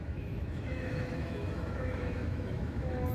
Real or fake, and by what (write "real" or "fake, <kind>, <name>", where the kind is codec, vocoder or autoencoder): fake, autoencoder, DAC-VAE